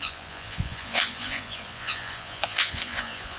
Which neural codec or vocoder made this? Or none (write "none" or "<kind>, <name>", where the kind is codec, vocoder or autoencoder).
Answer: vocoder, Vocos